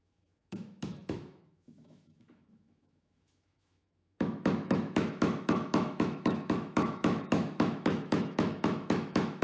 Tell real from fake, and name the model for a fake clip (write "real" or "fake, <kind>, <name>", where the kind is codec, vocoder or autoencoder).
fake, autoencoder, DAC-VAE